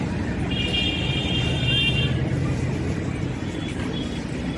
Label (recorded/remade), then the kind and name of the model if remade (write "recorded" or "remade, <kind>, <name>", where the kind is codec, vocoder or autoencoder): recorded